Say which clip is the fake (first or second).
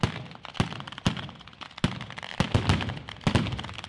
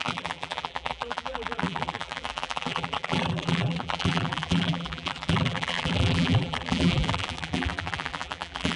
second